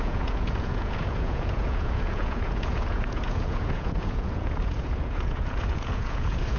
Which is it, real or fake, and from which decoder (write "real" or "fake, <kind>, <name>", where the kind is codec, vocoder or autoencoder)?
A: fake, vocoder, Vocos